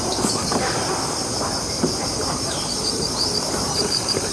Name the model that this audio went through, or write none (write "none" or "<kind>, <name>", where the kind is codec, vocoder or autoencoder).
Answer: vocoder, BigVGAN v2